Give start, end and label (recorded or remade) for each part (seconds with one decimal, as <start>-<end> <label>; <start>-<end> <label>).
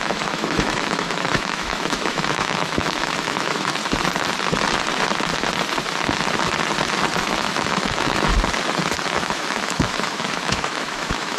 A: 0.0-3.8 remade; 3.8-7.2 recorded; 7.2-8.3 remade; 8.3-9.1 recorded; 9.1-11.4 remade